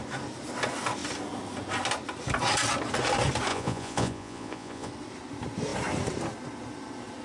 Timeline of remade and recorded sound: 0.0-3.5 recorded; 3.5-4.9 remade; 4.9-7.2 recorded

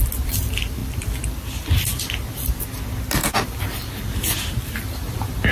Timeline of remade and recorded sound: 0.0-0.8 recorded; 0.8-2.6 remade; 2.6-3.2 recorded; 3.2-4.1 remade; 4.1-5.5 recorded

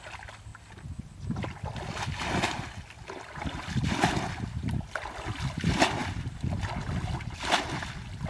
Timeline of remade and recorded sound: 0.0-8.3 recorded

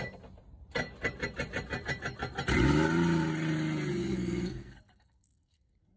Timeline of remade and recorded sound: 0.0-4.0 recorded; 4.0-6.0 remade

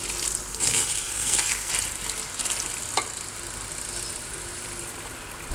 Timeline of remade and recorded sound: 0.0-0.5 recorded; 0.5-1.7 remade; 1.7-5.5 recorded

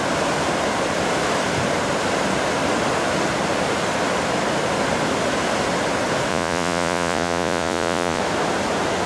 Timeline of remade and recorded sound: 0.0-6.3 recorded; 6.3-8.2 remade; 8.2-9.1 recorded

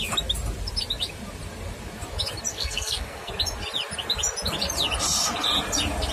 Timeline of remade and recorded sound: 0.0-2.5 recorded; 2.5-3.3 remade; 3.3-6.1 recorded

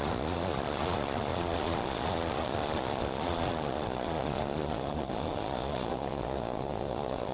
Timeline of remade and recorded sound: 0.0-7.3 remade